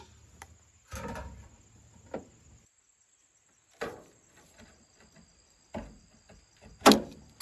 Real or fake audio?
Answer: real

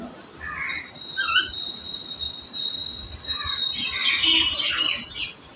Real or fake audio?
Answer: real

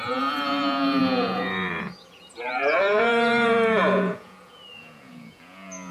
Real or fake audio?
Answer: fake